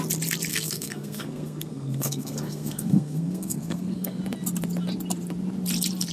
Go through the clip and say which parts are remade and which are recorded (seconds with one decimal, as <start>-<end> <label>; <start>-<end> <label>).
0.0-0.5 recorded; 0.5-4.2 remade; 4.2-6.1 recorded

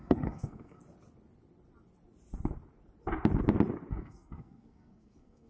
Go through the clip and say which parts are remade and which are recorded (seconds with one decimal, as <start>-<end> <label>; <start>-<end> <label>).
0.0-0.8 remade; 0.8-3.9 recorded; 3.9-5.5 remade

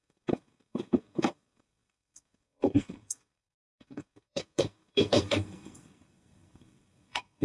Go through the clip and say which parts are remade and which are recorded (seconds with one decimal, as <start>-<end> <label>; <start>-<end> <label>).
0.0-7.4 remade

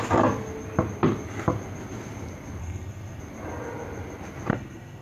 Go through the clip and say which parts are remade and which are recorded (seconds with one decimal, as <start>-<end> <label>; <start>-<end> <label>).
0.0-2.6 recorded; 2.6-3.2 remade; 3.2-4.5 recorded; 4.5-5.0 remade

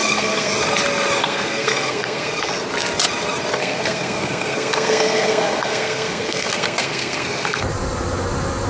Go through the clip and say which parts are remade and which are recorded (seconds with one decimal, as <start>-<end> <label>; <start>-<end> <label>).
0.0-0.5 remade; 0.5-1.2 recorded; 1.2-2.5 remade; 2.5-3.6 recorded; 3.6-7.7 remade; 7.7-8.7 recorded